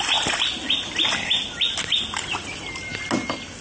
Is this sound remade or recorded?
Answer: recorded